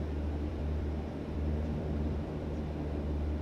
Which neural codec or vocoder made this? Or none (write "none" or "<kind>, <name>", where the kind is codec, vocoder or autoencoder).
vocoder, BigVGAN v2